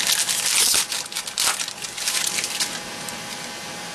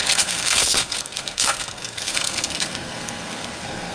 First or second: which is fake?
second